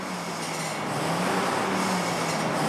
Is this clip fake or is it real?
real